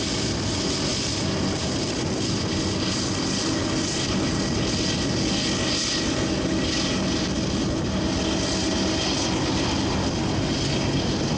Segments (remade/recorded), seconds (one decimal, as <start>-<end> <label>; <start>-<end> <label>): 0.0-11.4 recorded